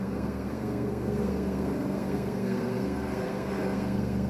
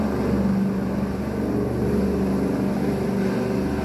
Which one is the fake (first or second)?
first